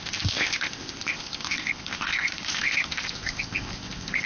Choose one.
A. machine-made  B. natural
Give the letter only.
A